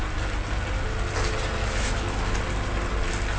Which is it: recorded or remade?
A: recorded